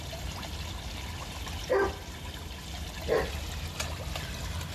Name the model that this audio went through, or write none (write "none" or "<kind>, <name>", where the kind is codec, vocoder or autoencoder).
none